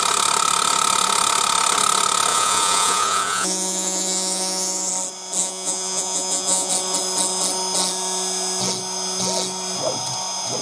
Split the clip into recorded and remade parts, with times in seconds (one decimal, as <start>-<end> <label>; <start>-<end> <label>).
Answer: 0.0-2.3 recorded; 2.3-4.9 remade; 4.9-5.4 recorded; 5.4-6.7 remade; 6.7-10.6 recorded